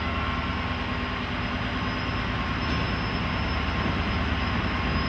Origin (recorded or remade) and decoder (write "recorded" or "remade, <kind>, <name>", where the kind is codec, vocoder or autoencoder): recorded